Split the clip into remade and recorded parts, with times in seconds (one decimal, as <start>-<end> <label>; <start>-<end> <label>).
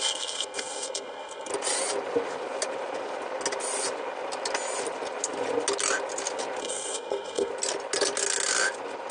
0.0-1.5 remade; 1.5-6.6 recorded; 6.6-7.5 remade; 7.5-9.1 recorded